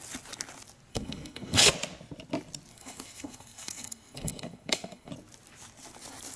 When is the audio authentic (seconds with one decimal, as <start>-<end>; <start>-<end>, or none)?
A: 0.0-0.9; 1.7-2.7; 5.1-6.4